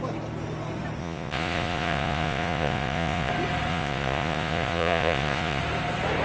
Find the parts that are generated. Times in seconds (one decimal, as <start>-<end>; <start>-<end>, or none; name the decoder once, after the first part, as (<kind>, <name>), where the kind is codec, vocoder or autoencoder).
1.0-3.3 (vocoder, Vocos); 3.7-5.6